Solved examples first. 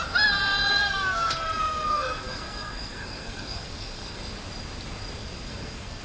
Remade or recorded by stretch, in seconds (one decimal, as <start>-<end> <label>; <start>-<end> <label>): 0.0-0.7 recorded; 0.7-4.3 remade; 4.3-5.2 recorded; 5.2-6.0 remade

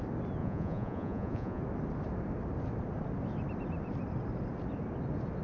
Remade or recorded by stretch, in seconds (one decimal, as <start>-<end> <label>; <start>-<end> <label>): 0.0-0.4 recorded; 0.4-1.6 remade; 1.6-5.4 recorded

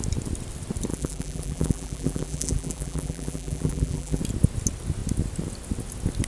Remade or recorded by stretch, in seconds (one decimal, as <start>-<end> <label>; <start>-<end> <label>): 0.0-0.9 recorded; 0.9-4.2 remade; 4.2-6.3 recorded

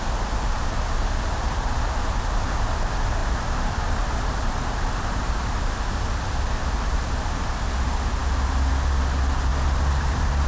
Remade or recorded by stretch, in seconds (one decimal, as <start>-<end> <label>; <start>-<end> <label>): 0.0-3.2 recorded; 3.2-5.7 remade; 5.7-9.5 recorded; 9.5-10.5 remade

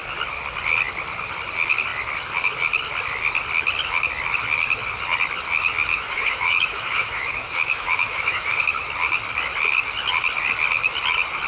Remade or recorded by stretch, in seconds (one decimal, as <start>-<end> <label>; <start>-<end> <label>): 0.0-5.9 recorded; 5.9-8.6 remade; 8.6-11.5 recorded

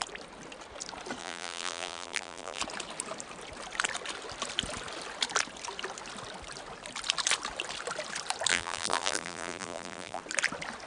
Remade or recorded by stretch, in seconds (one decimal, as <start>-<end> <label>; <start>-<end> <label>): 0.0-1.2 recorded; 1.2-2.6 remade; 2.6-8.5 recorded; 8.5-10.2 remade; 10.2-10.9 recorded